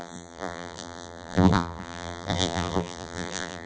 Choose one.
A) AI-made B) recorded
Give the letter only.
A